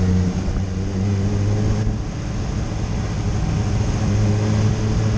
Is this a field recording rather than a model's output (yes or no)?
yes